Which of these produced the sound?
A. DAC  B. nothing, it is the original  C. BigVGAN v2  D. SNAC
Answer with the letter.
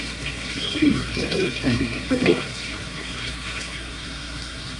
D